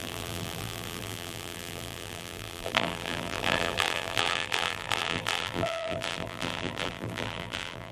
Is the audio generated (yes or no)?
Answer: yes